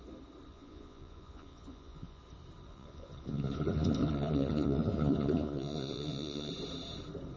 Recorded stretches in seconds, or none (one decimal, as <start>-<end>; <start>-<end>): 0.0-0.5; 2.2-2.7; 6.5-7.4